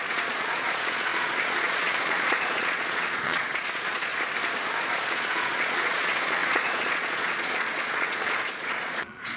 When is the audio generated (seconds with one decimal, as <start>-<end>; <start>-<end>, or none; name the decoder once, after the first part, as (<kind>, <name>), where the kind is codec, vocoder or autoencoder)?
0.0-4.1 (vocoder, Vocos); 4.9-9.4